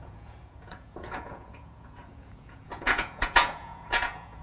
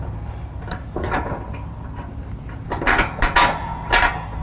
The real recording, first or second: second